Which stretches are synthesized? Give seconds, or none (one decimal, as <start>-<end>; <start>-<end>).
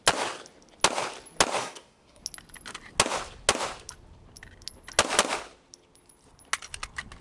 1.6-2.2